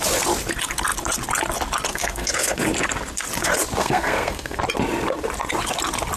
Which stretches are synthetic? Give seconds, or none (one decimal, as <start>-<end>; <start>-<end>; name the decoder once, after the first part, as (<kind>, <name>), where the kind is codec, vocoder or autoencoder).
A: 1.9-2.6 (codec, SNAC); 3.8-4.6